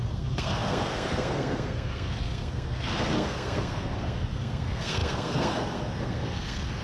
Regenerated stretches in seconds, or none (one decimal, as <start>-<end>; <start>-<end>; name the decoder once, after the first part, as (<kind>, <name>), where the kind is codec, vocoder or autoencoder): 0.0-6.8 (codec, SNAC)